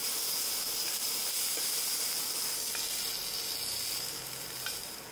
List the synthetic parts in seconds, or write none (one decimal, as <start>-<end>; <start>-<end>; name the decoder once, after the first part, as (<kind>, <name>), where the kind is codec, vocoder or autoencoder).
none